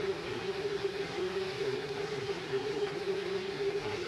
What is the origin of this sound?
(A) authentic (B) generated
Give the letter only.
B